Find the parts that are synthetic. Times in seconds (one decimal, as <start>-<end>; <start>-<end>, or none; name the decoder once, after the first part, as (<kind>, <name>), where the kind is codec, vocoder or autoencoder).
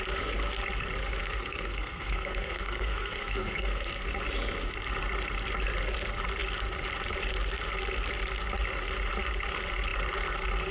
1.2-4.1 (codec, SNAC)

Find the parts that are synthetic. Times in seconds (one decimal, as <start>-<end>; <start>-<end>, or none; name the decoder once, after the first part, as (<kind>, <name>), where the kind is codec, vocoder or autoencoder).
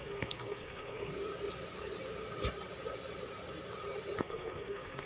0.0-1.1 (codec, SNAC); 4.2-5.1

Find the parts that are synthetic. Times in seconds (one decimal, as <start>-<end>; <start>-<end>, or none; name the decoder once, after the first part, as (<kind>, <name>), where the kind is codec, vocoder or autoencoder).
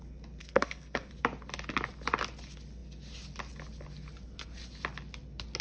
0.4-1.1 (codec, SNAC)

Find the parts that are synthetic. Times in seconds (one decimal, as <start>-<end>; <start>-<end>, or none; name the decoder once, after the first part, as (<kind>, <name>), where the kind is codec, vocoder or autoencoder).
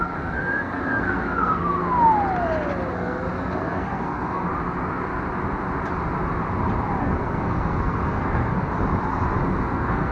0.0-1.8 (codec, SNAC); 2.9-4.5; 7.0-8.7; 9.4-10.1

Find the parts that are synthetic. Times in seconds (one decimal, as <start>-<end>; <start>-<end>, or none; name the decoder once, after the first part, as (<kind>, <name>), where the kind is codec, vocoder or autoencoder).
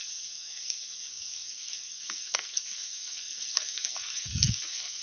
0.0-5.0 (codec, SNAC)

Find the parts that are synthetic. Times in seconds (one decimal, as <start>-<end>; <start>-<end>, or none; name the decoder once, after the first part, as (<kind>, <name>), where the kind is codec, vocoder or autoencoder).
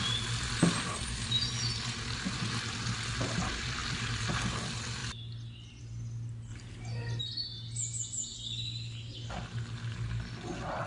none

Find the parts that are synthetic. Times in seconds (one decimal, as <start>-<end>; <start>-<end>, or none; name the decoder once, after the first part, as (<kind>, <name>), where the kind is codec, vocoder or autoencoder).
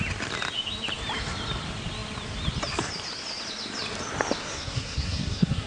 4.4-5.7 (codec, SNAC)